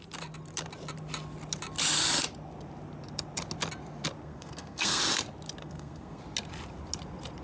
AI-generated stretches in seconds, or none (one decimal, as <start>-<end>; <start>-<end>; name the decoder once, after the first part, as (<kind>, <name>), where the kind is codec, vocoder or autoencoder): 4.2-5.0 (codec, SNAC); 5.6-6.2